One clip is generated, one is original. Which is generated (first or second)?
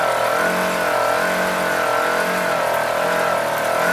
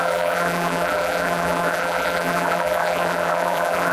second